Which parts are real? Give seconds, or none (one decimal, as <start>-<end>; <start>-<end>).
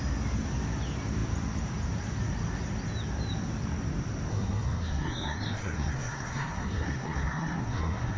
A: 0.0-4.3